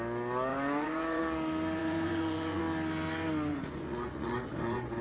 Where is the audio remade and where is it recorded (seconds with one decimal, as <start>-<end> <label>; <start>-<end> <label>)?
0.0-0.5 recorded; 0.5-1.2 remade; 1.2-1.8 recorded; 1.8-2.6 remade; 2.6-3.5 recorded; 3.5-5.0 remade